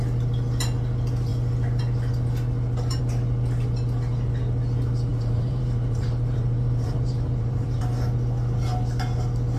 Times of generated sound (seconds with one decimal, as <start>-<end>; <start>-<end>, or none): 5.1-7.8